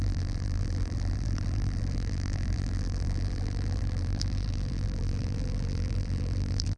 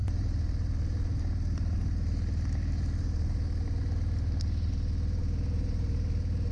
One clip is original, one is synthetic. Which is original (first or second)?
second